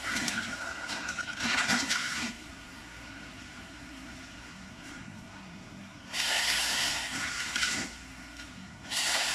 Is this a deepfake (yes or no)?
yes